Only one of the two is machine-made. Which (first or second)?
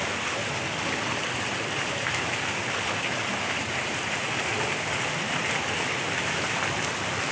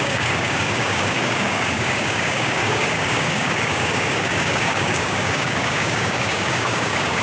second